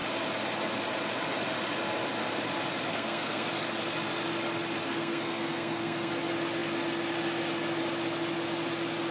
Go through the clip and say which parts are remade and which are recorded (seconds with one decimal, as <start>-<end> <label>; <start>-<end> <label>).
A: 0.0-2.9 recorded; 2.9-3.5 remade; 3.5-4.8 recorded; 4.8-6.1 remade; 6.1-9.1 recorded